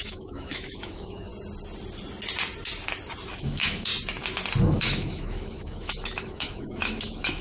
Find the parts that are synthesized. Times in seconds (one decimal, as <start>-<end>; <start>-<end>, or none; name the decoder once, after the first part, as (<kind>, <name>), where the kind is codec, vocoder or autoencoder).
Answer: 0.0-1.3 (autoencoder, DAC-VAE); 3.3-3.9; 4.6-7.4

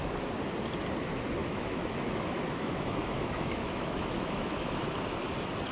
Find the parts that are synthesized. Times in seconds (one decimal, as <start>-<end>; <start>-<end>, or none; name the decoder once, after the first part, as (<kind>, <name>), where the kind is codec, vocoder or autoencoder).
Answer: 1.4-4.8 (autoencoder, DAC-VAE)

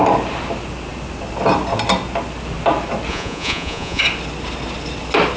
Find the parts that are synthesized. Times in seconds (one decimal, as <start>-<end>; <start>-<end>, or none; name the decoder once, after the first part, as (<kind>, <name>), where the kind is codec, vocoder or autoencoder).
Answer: 3.1-4.0 (vocoder, Vocos)

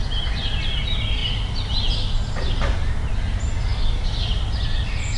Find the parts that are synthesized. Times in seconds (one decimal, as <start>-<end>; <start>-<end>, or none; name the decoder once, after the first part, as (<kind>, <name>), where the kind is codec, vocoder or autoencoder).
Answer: none

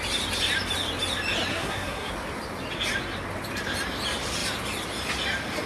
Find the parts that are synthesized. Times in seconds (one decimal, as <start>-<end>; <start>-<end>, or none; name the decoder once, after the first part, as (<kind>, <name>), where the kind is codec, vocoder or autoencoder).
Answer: 1.5-2.1 (codec, SNAC)

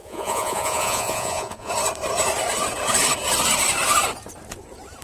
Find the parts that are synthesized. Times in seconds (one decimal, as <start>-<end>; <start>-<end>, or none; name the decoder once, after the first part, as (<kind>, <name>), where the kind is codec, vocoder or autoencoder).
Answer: 0.0-1.7 (vocoder, Vocos)